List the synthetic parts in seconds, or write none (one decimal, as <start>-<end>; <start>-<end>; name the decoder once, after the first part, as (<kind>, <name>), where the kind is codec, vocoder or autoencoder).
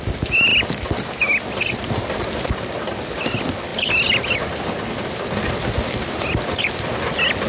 none